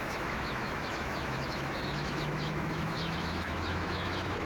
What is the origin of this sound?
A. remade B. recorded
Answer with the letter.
A